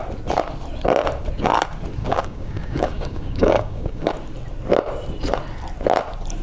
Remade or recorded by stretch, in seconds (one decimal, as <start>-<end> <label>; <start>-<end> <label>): 0.0-2.0 recorded; 2.0-4.1 remade; 4.1-6.4 recorded